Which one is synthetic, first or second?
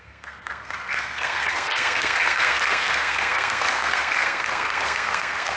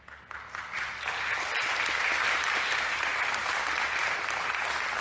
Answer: first